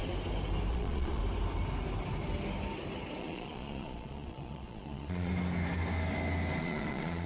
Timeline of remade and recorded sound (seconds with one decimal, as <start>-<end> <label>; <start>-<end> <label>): 0.0-0.7 recorded; 0.7-1.2 remade; 1.2-3.2 recorded; 3.2-5.3 remade; 5.3-6.6 recorded; 6.6-7.3 remade